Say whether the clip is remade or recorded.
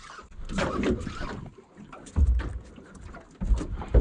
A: recorded